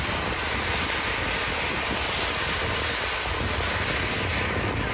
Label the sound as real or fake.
real